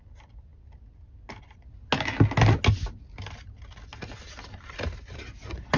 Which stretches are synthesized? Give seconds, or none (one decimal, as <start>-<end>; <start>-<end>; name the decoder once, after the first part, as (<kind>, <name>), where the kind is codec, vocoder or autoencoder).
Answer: none

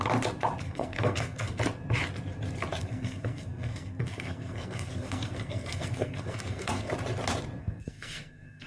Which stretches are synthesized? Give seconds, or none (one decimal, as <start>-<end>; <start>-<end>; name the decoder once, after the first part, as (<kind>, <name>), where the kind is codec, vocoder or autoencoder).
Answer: 0.6-1.6 (codec, SNAC); 2.8-6.9; 7.6-8.7

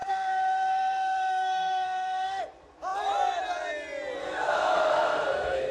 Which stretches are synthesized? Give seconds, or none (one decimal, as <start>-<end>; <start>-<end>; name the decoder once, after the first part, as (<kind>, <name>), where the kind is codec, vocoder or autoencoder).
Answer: 0.0-2.4 (codec, SNAC); 4.2-5.7

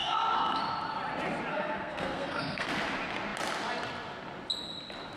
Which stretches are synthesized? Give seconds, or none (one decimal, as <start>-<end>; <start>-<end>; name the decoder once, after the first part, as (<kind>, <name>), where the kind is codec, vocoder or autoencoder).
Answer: 0.0-0.6 (codec, SNAC); 1.5-2.7

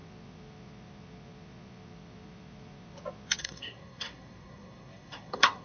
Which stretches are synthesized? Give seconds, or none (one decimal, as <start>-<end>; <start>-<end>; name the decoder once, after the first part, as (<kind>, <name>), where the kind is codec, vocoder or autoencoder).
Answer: 3.4-5.6 (codec, SNAC)

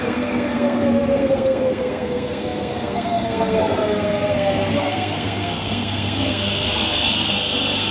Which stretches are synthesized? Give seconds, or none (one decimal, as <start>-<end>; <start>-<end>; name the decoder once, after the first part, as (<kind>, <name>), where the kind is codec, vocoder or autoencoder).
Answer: 0.0-7.9 (codec, SNAC)

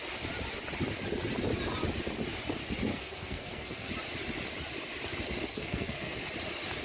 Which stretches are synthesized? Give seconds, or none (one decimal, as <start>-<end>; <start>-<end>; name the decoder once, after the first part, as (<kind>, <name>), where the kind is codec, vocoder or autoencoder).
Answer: 2.9-3.9 (codec, SNAC); 5.5-6.2